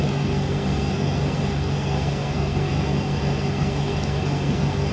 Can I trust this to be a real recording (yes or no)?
no